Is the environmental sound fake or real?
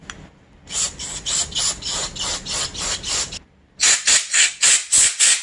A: real